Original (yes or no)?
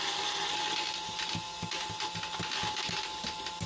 yes